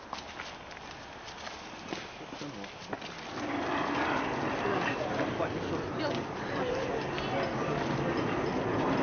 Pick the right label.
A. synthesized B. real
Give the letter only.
B